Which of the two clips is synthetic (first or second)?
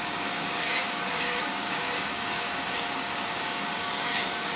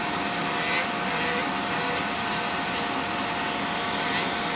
first